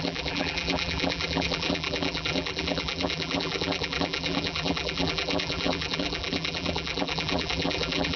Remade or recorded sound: remade